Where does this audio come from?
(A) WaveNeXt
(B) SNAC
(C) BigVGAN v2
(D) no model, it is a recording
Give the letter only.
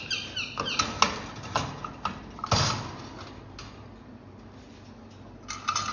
D